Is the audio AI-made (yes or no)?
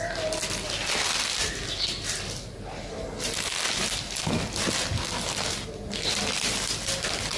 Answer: no